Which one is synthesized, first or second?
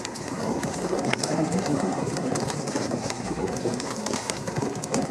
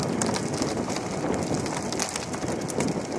first